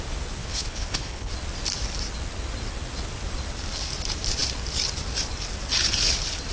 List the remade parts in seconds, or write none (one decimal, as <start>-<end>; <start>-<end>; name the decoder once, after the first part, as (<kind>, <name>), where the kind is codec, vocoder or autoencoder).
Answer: 0.4-1.3 (codec, HILCodec)